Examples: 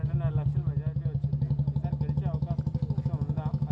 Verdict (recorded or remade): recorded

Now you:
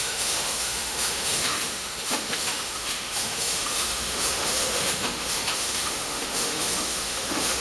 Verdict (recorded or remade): remade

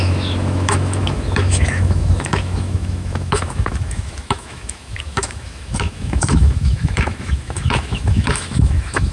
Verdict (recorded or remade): remade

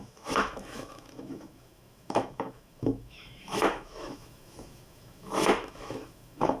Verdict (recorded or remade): remade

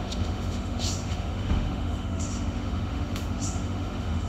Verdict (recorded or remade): remade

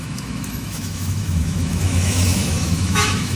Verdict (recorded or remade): remade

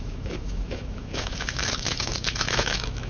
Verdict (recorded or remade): remade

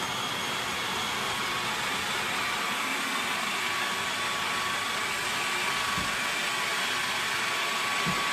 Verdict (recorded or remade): recorded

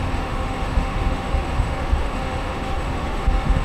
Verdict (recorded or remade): remade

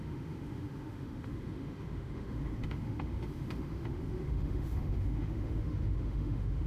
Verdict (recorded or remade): remade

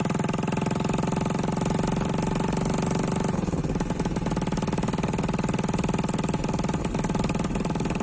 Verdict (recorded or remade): recorded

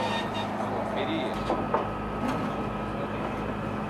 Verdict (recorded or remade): recorded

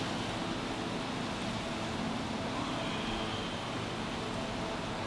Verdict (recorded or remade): recorded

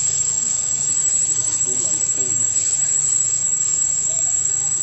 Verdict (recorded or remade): remade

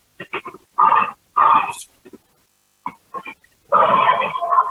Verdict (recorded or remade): recorded